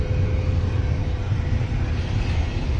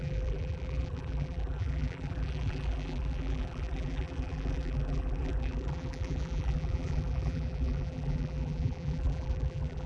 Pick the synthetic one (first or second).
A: second